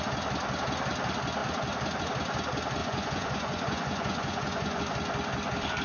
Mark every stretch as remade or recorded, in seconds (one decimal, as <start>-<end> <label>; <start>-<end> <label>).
0.0-2.8 recorded; 2.8-4.8 remade; 4.8-5.8 recorded